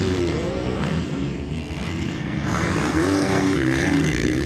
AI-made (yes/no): yes